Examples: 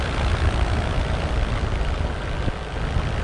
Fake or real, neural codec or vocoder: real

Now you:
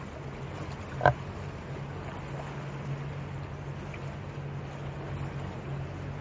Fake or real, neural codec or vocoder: real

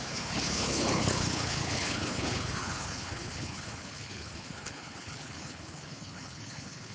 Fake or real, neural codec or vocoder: fake, codec, HILCodec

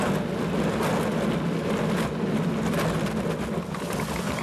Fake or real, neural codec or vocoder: real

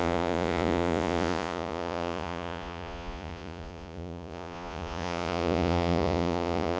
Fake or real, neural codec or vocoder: fake, vocoder, Vocos